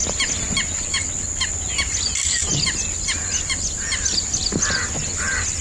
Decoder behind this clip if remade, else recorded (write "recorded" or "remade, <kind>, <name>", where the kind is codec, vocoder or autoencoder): recorded